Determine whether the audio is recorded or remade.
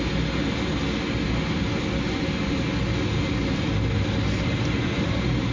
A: recorded